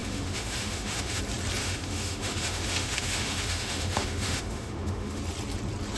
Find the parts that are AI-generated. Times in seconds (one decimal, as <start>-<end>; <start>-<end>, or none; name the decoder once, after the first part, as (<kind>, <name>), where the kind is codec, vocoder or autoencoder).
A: 0.0-1.2 (autoencoder, DAC-VAE); 1.6-5.2